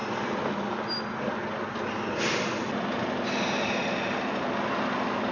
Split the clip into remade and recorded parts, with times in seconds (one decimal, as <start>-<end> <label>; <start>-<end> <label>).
0.0-5.3 recorded